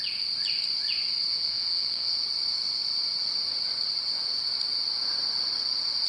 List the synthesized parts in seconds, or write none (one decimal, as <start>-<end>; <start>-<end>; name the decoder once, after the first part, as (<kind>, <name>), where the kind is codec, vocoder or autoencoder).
1.3-2.2 (vocoder, WaveNeXt)